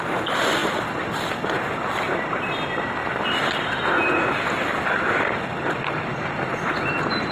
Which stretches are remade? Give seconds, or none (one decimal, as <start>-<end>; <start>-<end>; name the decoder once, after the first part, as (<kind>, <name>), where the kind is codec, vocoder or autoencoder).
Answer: none